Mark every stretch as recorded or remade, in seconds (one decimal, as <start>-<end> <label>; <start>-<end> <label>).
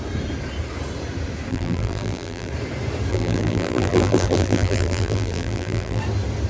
0.0-1.5 recorded; 1.5-2.5 remade; 2.5-3.1 recorded; 3.1-6.0 remade; 6.0-6.5 recorded